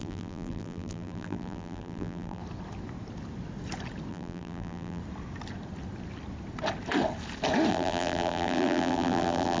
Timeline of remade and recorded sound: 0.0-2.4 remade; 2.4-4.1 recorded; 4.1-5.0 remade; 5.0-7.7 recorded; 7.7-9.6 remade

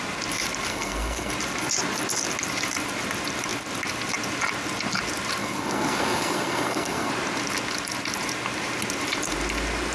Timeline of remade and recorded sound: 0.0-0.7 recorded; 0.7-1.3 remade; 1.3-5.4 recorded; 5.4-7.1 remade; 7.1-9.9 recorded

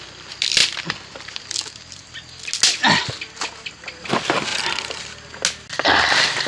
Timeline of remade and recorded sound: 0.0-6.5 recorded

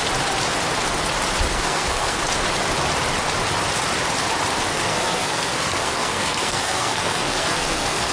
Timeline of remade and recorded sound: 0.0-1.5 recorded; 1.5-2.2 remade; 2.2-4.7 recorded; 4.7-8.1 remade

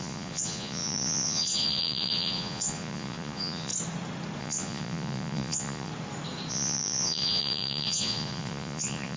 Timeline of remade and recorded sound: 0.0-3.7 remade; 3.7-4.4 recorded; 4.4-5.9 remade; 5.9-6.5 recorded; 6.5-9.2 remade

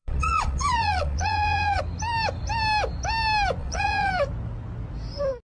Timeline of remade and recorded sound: 0.0-1.8 remade; 1.8-3.6 recorded; 3.6-4.1 remade; 4.1-5.6 recorded